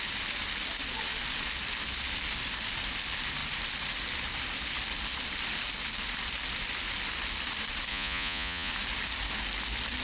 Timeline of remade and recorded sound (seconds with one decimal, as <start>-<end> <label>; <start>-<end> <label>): 0.0-7.9 recorded; 7.9-8.7 remade; 8.7-10.0 recorded